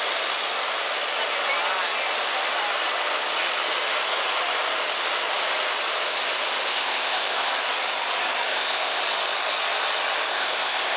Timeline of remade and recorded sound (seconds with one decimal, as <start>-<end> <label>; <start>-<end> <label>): 0.0-6.7 recorded; 6.7-7.5 remade; 7.5-8.5 recorded; 8.5-9.0 remade; 9.0-10.3 recorded; 10.3-11.0 remade

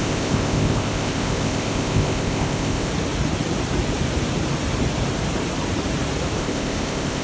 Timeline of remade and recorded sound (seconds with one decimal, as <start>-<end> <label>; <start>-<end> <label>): 0.0-2.9 remade; 2.9-6.4 recorded; 6.4-7.2 remade

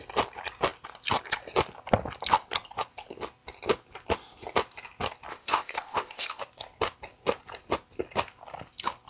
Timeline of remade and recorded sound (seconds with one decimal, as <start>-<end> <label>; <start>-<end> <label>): 0.0-5.3 recorded; 5.3-6.4 remade; 6.4-9.1 recorded

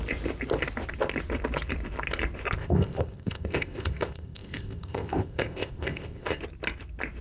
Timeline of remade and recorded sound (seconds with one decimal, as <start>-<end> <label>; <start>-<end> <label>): 0.0-2.6 recorded; 2.6-6.4 remade; 6.4-7.2 recorded

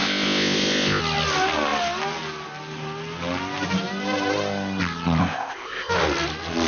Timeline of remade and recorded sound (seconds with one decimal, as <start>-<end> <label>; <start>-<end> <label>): 0.0-1.0 remade; 1.0-5.2 recorded; 5.2-5.9 remade; 5.9-6.7 recorded

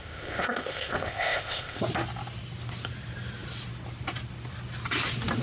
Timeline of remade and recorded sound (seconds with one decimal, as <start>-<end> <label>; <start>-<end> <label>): 0.0-1.8 remade; 1.8-5.4 recorded